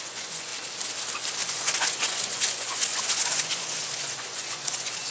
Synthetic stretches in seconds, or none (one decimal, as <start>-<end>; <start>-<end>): 0.0-0.5; 1.5-5.1